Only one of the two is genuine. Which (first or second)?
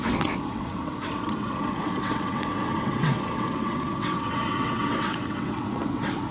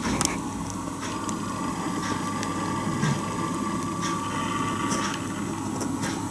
second